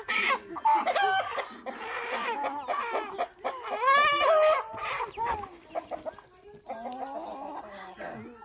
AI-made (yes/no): no